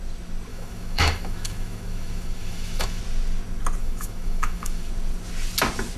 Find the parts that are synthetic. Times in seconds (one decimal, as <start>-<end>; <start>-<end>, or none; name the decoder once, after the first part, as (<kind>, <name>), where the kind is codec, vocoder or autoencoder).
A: 0.5-3.0 (autoencoder, DAC-VAE); 3.8-4.9